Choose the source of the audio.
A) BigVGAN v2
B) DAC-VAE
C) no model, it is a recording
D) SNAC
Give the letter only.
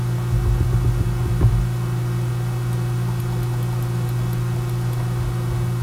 C